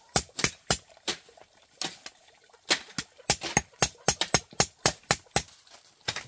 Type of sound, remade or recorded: recorded